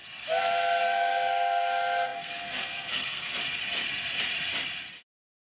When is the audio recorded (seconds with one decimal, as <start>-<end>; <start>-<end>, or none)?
0.0-0.8; 3.3-5.5